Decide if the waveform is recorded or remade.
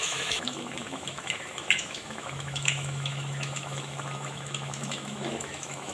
remade